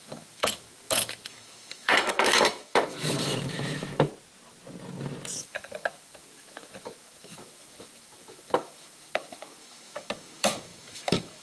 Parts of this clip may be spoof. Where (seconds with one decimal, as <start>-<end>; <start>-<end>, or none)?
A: 0.0-4.1; 5.4-11.4